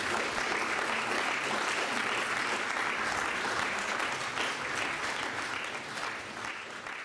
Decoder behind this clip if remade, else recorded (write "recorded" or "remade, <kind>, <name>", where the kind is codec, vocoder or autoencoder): recorded